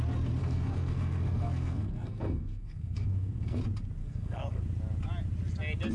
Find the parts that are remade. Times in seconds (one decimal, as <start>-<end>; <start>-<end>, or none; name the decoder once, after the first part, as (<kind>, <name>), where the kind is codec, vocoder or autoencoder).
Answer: 0.4-3.6 (codec, SNAC); 4.0-4.6